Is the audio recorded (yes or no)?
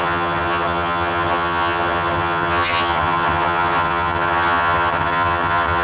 no